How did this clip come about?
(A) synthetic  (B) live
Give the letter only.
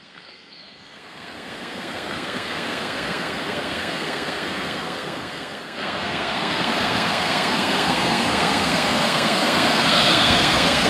A